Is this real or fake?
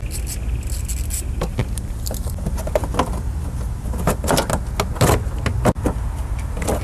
real